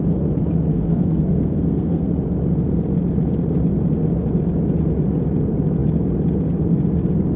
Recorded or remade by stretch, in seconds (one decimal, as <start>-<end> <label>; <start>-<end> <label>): 0.0-0.7 recorded; 0.7-2.1 remade; 2.1-7.4 recorded